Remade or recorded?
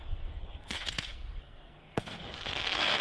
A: remade